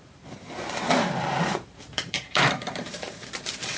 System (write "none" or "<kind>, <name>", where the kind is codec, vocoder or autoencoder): vocoder, BigVGAN v2